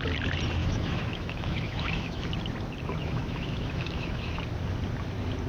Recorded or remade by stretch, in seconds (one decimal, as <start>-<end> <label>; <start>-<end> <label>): 0.0-0.6 recorded; 0.6-2.3 remade; 2.3-3.0 recorded; 3.0-4.4 remade; 4.4-5.5 recorded